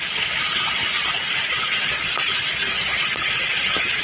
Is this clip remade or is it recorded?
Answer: recorded